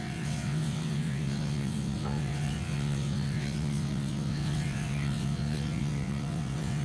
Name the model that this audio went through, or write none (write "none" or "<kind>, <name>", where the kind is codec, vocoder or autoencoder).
vocoder, WaveNeXt